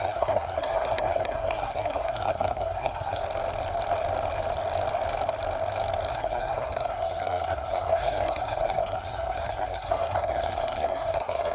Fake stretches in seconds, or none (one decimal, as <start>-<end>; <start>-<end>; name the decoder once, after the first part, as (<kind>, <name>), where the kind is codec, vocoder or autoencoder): 0.0-3.2 (codec, SNAC); 6.1-11.5